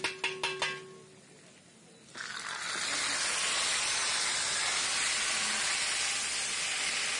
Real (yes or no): yes